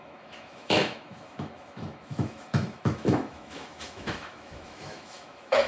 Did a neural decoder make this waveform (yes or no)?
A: yes